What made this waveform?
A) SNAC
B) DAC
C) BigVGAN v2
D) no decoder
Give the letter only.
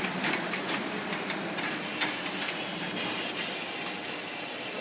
D